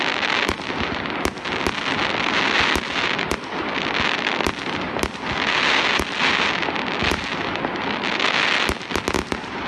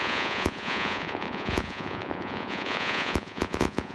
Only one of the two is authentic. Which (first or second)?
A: first